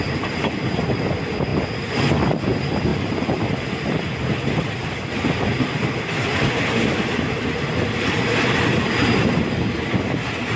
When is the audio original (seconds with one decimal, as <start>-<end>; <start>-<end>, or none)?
0.0-1.5; 2.1-2.9; 6.5-10.6